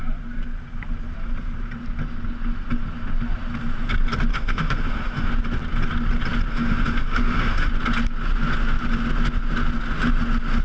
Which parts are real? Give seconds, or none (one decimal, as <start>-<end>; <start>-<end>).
0.0-4.3; 5.3-6.5; 7.7-10.6